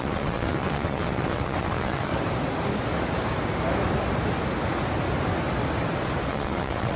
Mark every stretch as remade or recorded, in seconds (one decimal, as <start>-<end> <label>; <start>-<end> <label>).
0.0-2.1 remade; 2.1-6.3 recorded; 6.3-7.0 remade